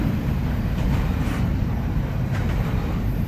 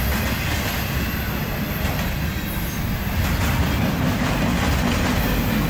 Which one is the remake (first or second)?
first